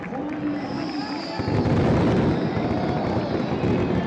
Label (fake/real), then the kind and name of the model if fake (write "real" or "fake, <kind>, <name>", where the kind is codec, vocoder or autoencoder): real